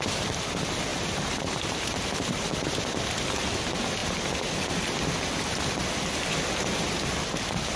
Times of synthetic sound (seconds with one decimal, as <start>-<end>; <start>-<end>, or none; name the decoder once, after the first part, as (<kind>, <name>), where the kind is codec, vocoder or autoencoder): 0.9-3.6 (vocoder, BigVGAN v2)